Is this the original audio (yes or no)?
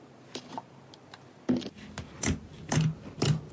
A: yes